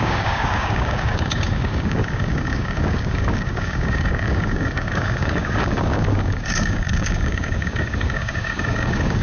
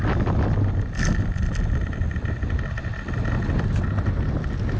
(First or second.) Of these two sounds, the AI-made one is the first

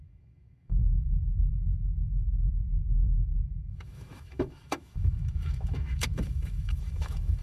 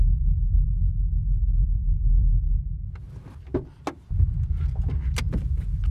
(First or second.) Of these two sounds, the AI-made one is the first